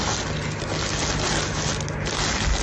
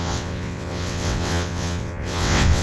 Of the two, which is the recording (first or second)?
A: first